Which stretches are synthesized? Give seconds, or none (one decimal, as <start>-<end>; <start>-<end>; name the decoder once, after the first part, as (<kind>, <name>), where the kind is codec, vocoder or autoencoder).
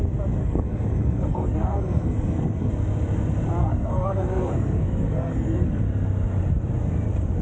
0.4-2.7 (codec, SNAC); 3.6-5.8